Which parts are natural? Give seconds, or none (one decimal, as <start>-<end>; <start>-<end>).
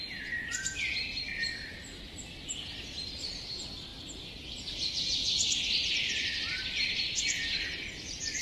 0.0-8.4